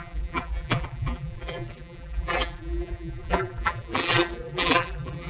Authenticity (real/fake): fake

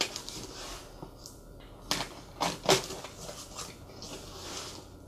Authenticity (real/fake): real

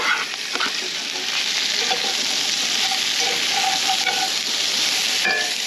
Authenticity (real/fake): real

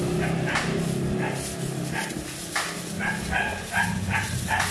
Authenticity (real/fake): real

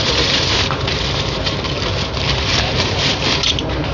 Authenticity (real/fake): fake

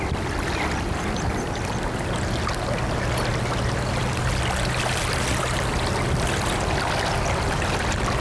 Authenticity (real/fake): real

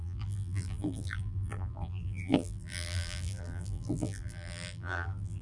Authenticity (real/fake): fake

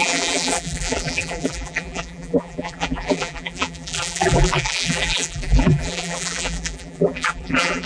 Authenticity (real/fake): fake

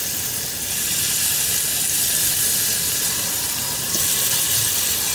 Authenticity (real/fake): real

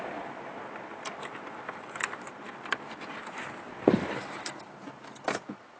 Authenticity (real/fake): fake